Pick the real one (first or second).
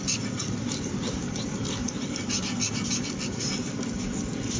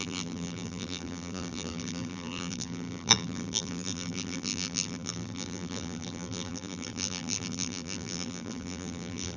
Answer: first